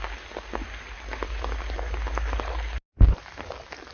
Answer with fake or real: real